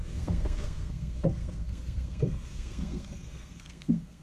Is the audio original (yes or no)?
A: no